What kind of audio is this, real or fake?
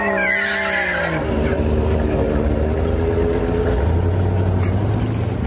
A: real